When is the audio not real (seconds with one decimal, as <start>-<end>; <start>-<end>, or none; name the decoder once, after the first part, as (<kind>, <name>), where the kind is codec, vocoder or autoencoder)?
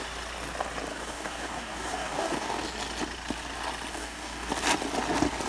0.9-2.6 (codec, DAC); 3.9-4.5